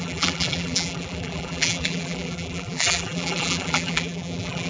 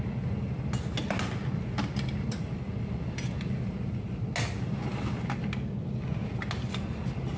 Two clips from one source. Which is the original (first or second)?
second